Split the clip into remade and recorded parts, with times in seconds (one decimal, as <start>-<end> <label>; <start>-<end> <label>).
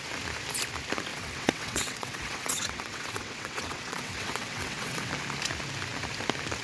0.0-1.1 recorded; 1.1-5.1 remade; 5.1-6.6 recorded